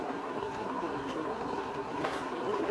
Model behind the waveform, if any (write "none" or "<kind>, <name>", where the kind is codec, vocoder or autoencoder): codec, SNAC